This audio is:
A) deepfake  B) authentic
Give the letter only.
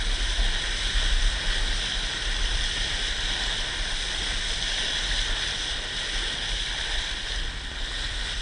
B